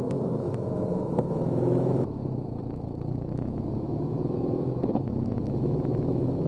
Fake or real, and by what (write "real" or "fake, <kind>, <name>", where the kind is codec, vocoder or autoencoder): fake, autoencoder, DAC-VAE